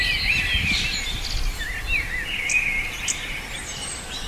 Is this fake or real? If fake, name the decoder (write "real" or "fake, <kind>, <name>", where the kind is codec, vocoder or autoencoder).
real